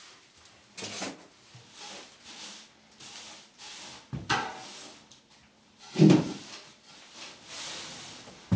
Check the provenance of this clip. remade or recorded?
recorded